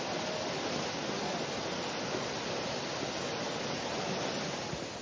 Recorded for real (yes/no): yes